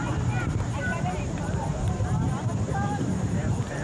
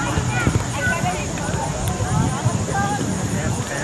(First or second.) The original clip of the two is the second